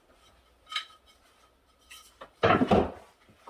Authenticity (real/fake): real